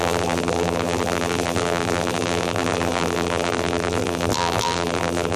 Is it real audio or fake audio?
fake